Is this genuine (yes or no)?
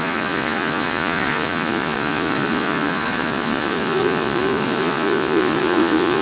no